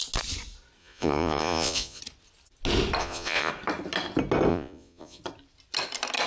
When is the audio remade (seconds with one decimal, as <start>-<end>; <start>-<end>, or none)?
0.8-2.0; 3.0-3.5; 4.5-5.2